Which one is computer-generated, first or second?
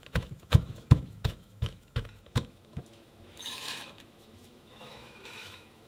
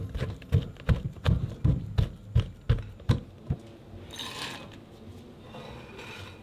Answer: first